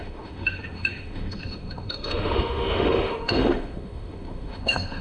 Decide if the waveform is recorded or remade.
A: remade